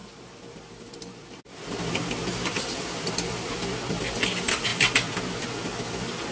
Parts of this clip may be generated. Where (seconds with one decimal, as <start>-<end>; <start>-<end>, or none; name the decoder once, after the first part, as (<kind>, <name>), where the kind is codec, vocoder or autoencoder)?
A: 0.0-4.7 (vocoder, BigVGAN v2)